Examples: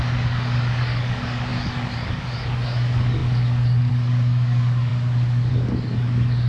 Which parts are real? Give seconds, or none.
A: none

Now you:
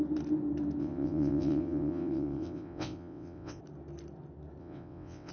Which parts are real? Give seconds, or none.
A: 0.0-0.8; 3.6-4.6

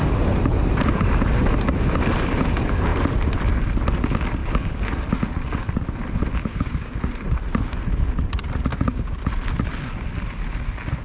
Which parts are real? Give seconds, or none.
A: 0.0-4.4; 4.9-6.5; 7.1-8.7; 9.2-11.0

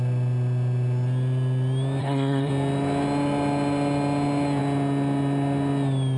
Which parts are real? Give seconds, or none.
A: 0.0-2.0; 2.5-6.2

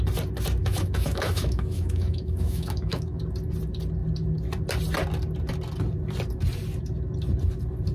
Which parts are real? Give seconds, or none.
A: 0.0-0.6; 3.2-7.9

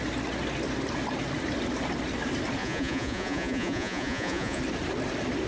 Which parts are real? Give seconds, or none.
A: 0.0-2.6; 4.6-5.5

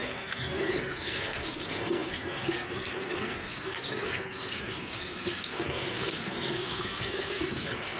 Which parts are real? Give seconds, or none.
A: none

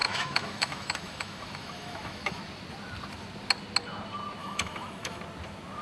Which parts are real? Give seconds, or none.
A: 2.4-4.4; 5.2-5.8